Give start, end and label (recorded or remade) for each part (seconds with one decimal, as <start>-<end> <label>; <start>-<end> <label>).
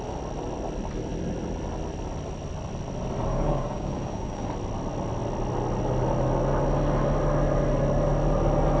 0.0-3.3 recorded; 3.3-4.5 remade; 4.5-8.8 recorded